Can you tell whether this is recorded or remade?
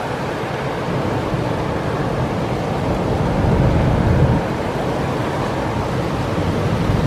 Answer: recorded